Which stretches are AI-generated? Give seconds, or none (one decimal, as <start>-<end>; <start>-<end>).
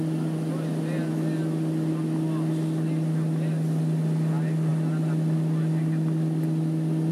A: none